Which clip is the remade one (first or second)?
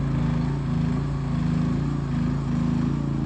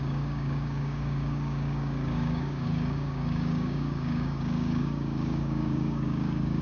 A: second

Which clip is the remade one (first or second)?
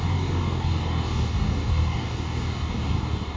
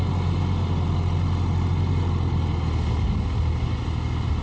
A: first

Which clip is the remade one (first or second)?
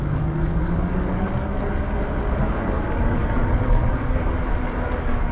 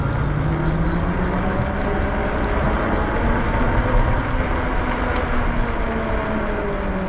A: first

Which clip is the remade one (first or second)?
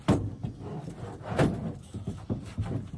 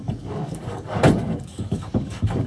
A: second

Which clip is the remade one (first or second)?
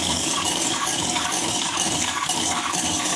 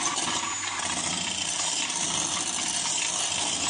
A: first